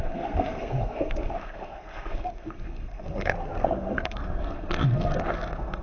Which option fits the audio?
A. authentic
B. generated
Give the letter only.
B